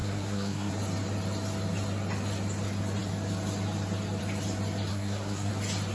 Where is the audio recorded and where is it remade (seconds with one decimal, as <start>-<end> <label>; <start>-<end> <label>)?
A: 0.0-0.7 remade; 0.7-4.9 recorded; 4.9-5.5 remade; 5.5-5.9 recorded